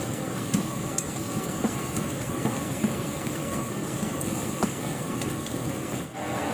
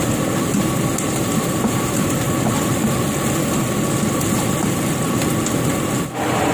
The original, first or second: second